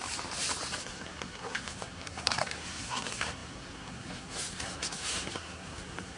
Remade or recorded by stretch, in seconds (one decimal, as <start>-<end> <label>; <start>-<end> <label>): 0.0-0.8 recorded; 0.8-6.2 remade